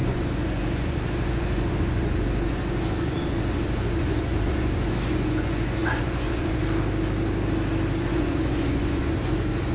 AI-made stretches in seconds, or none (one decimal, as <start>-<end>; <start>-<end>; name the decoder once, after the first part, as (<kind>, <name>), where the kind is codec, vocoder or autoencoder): 0.0-6.6 (vocoder, Vocos); 8.0-9.7